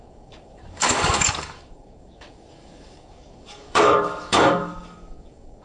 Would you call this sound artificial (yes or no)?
yes